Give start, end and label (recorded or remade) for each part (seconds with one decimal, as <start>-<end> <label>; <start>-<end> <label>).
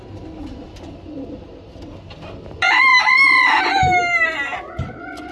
0.0-5.3 recorded